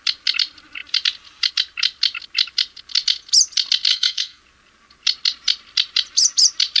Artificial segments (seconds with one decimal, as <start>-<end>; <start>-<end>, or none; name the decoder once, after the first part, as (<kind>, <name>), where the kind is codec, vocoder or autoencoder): 3.9-4.4 (codec, SNAC)